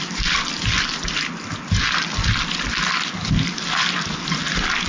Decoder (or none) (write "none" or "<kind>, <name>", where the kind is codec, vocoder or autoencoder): none